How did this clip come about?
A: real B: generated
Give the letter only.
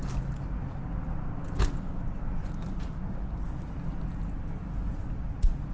A